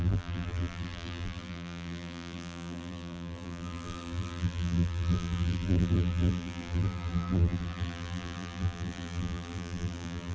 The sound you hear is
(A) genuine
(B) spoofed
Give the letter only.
B